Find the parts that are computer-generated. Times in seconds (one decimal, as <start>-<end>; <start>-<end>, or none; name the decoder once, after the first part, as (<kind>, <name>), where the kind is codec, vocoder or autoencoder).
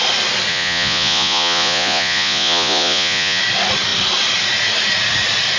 0.5-3.4 (vocoder, Vocos)